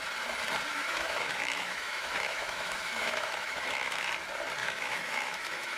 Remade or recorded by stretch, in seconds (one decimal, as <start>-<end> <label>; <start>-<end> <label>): 0.0-0.7 recorded; 0.7-4.0 remade; 4.0-4.6 recorded; 4.6-5.8 remade